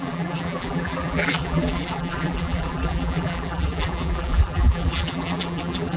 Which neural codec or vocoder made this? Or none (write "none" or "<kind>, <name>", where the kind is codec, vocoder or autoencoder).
vocoder, BigVGAN v2